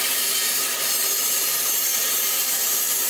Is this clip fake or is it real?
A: fake